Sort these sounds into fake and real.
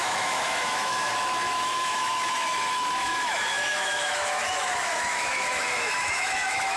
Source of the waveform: fake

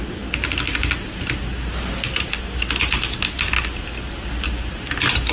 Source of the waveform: real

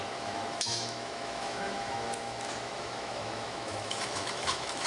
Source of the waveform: fake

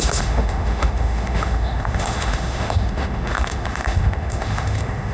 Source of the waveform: fake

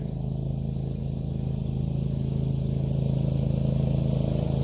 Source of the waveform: real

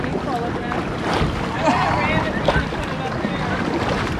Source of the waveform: real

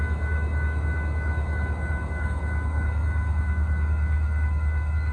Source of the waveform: fake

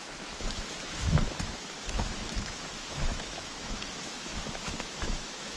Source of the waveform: fake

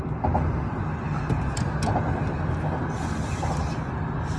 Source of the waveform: real